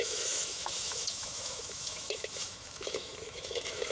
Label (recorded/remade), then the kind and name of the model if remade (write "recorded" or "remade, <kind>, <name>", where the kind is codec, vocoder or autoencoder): remade, autoencoder, DAC-VAE